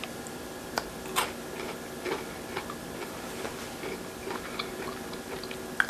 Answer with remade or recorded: recorded